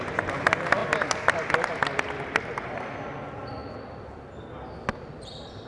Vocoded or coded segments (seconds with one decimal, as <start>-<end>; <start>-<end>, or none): none